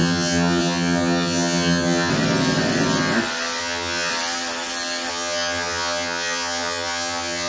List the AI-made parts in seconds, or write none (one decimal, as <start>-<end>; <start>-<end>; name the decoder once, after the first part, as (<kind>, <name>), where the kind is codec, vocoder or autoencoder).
0.0-2.1 (vocoder, HiFi-GAN); 3.6-4.1; 5.1-7.5